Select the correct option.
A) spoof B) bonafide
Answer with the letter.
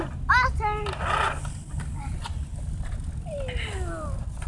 B